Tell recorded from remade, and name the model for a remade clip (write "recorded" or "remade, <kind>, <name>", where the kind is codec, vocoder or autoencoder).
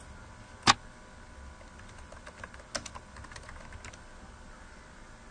recorded